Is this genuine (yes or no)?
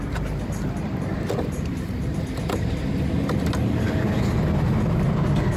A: yes